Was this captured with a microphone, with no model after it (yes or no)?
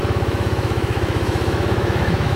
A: no